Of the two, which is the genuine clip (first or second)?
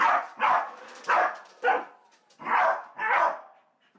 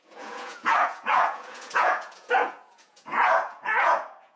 first